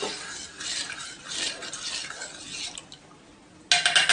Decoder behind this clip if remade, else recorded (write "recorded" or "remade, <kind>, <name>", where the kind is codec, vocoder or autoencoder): recorded